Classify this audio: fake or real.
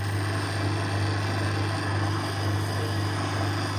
real